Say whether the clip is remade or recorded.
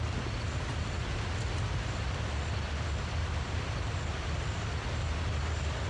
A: recorded